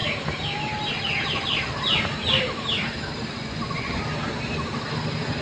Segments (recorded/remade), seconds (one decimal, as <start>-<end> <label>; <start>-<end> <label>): 0.0-3.3 recorded; 3.3-4.0 remade; 4.0-5.4 recorded